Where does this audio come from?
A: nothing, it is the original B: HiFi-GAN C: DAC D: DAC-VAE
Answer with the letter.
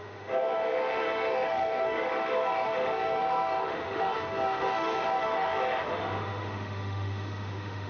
D